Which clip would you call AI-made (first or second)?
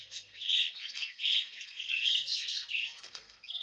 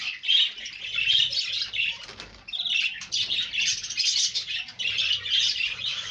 first